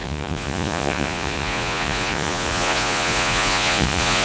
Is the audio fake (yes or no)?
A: yes